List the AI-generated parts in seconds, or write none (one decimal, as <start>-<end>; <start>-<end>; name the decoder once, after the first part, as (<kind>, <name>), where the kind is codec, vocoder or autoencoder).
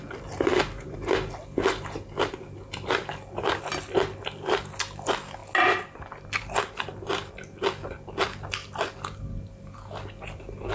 none